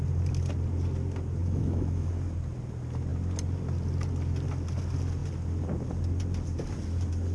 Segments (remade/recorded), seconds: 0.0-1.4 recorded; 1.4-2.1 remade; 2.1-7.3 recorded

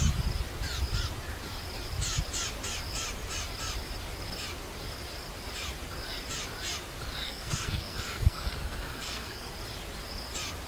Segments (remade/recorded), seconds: 0.0-7.2 recorded; 7.2-9.5 remade; 9.5-10.7 recorded

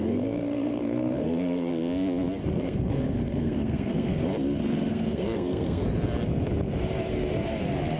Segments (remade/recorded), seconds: 0.0-1.7 remade; 1.7-2.6 recorded; 2.6-4.1 remade; 4.1-4.9 recorded; 4.9-5.8 remade; 5.8-8.0 recorded

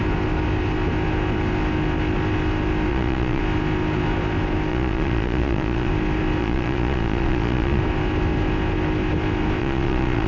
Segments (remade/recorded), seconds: 0.0-2.9 recorded; 2.9-3.4 remade; 3.4-4.7 recorded; 4.7-5.9 remade; 5.9-6.4 recorded; 6.4-7.8 remade; 7.8-9.6 recorded; 9.6-10.3 remade